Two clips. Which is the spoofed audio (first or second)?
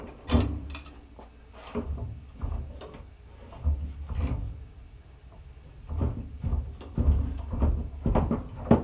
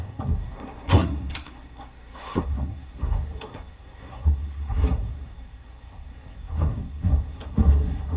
second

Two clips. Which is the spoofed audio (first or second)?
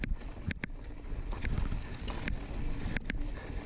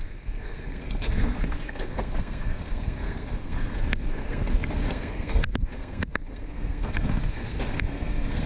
second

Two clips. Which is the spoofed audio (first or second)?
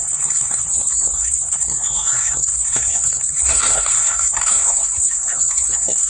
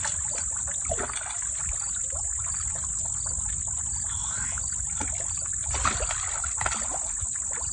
first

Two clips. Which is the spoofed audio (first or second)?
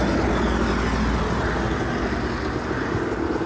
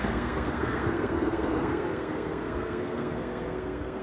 second